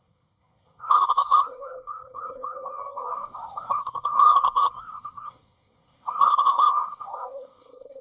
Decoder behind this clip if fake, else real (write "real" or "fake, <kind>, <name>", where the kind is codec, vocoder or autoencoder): fake, codec, SNAC